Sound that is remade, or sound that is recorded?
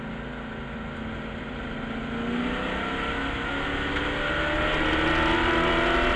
recorded